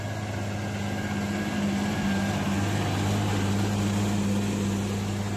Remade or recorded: recorded